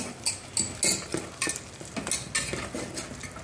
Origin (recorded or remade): recorded